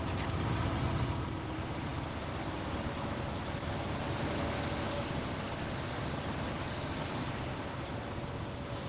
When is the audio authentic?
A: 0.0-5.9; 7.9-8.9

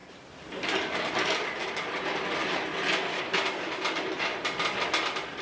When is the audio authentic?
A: 0.0-5.4

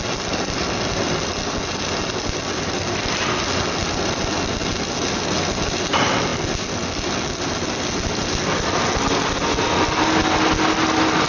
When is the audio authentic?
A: 0.0-11.3

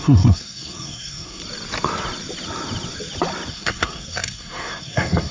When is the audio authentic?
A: 1.4-3.5

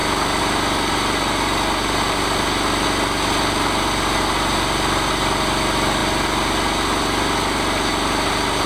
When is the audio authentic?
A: 0.0-8.7

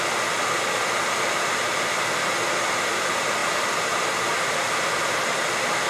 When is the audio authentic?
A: 0.0-3.4; 4.8-5.9

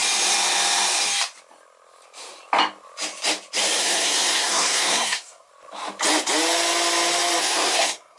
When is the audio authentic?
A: 0.0-3.8; 5.5-7.4

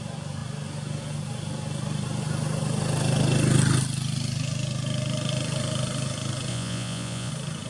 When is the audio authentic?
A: 0.0-6.5; 7.3-7.7